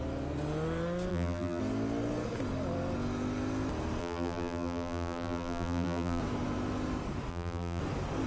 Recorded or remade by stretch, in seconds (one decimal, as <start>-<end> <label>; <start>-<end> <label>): 0.0-1.1 recorded; 1.1-1.6 remade; 1.6-4.0 recorded; 4.0-6.2 remade; 6.2-7.3 recorded; 7.3-7.8 remade; 7.8-8.3 recorded